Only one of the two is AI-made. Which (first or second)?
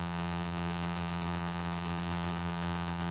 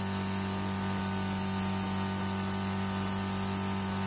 first